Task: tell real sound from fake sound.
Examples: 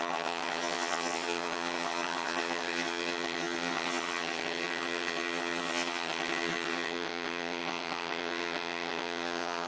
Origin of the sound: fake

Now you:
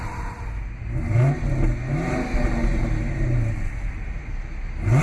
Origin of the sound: real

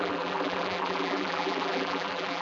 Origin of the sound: fake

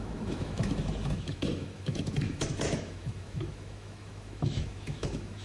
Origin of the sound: fake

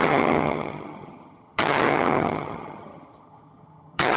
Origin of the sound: fake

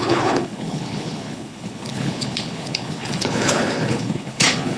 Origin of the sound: fake